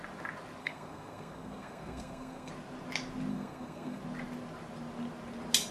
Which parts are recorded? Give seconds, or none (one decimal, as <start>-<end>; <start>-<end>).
0.0-0.6; 2.5-3.3; 4.0-5.7